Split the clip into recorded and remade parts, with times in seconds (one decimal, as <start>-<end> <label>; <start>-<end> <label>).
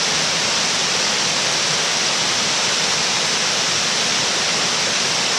0.0-5.4 recorded